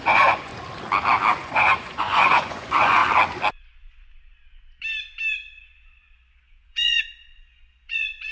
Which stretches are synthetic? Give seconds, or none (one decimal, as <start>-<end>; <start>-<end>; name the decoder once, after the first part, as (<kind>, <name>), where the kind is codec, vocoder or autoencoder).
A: 0.0-0.5 (vocoder, Vocos); 1.3-3.0; 5.6-8.3